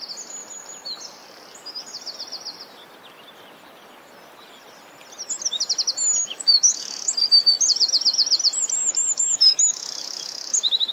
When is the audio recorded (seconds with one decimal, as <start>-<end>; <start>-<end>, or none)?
0.0-6.2; 7.1-8.8